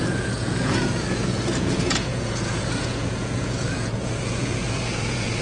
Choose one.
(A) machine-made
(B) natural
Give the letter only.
A